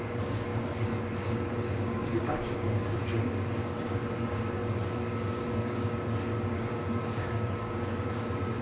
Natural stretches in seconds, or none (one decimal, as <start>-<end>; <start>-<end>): none